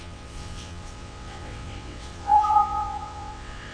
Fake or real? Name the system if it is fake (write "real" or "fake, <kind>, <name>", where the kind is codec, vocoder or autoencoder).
fake, vocoder, WaveNeXt